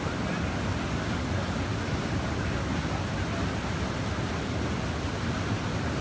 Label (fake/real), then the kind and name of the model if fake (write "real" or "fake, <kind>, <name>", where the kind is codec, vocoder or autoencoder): real